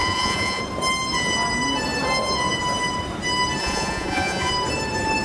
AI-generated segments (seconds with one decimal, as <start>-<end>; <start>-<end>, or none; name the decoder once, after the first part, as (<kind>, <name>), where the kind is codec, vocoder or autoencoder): 0.0-0.6 (vocoder, Vocos); 3.6-4.5